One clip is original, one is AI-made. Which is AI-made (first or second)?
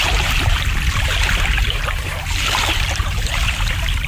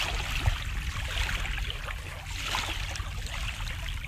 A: first